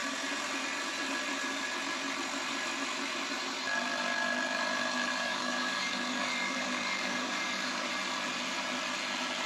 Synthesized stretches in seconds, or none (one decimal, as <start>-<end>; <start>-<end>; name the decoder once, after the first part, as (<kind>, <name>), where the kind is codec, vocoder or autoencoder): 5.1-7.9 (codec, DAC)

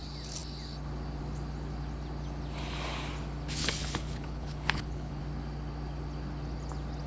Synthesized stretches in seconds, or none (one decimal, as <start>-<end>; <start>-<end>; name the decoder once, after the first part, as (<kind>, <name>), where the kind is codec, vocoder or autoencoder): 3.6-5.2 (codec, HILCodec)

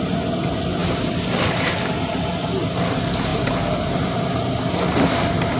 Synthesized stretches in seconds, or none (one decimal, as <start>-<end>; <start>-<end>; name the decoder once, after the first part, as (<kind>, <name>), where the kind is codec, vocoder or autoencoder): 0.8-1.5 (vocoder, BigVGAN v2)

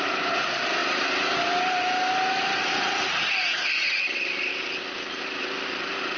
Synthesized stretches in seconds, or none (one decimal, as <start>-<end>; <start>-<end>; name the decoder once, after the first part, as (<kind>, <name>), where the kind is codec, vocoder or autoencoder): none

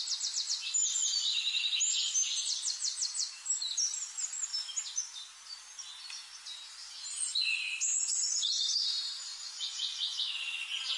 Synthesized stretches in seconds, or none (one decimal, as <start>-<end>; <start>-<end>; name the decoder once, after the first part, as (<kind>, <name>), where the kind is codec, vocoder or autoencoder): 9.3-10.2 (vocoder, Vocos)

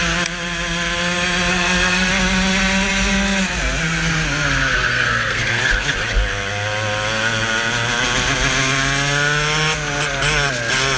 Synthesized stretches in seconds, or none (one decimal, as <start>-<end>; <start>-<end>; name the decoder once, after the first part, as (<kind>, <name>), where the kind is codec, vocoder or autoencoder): 1.5-2.1 (codec, SNAC); 4.9-5.6

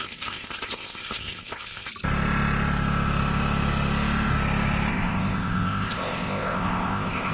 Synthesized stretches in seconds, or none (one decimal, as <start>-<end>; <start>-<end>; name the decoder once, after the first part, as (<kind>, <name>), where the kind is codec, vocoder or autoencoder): 0.0-1.9 (codec, ZipCodec); 4.9-7.3